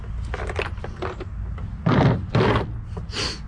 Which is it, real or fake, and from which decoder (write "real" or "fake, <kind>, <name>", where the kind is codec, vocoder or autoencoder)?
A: real